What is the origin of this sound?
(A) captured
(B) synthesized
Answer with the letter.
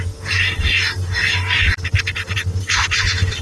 A